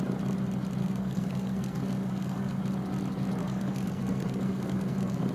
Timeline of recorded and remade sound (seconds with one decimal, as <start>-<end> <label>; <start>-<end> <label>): 0.0-0.8 recorded; 0.8-2.6 remade; 2.6-3.4 recorded; 3.4-5.3 remade